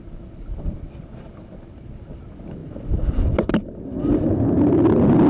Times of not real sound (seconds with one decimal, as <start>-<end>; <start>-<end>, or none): none